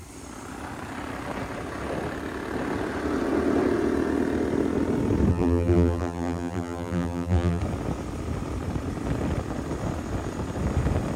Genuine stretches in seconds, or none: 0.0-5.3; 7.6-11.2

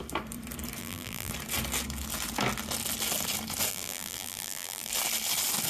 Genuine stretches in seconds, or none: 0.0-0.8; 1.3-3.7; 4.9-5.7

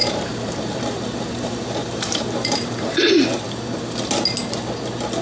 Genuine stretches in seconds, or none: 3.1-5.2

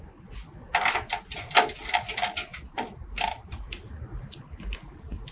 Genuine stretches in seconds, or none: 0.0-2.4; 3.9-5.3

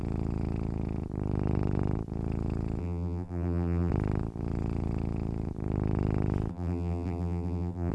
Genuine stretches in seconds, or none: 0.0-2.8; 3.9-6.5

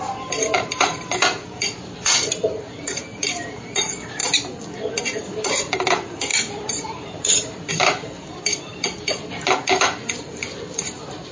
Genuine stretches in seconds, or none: 4.2-5.0

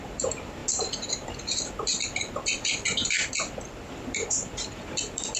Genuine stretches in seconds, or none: none

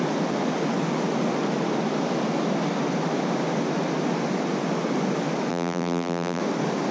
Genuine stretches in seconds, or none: 0.0-5.5; 6.4-6.9